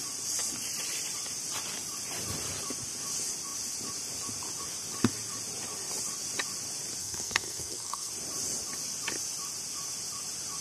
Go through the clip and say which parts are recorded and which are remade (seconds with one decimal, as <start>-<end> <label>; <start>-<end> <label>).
0.0-7.0 recorded; 7.0-8.1 remade; 8.1-10.6 recorded